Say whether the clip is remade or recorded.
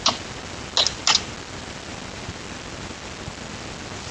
recorded